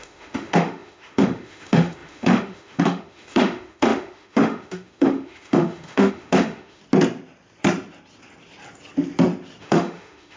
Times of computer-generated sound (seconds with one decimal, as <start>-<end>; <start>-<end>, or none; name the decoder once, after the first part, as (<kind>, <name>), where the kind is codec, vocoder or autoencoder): 0.0-6.8 (autoencoder, DAC-VAE); 9.6-10.4